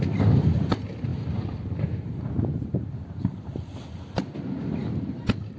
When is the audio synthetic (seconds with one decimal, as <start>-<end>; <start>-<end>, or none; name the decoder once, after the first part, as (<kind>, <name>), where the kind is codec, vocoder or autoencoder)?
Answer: none